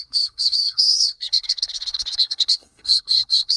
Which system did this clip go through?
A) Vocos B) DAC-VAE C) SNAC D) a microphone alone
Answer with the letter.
C